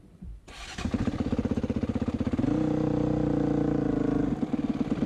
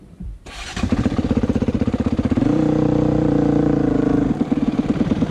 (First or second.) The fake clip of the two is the second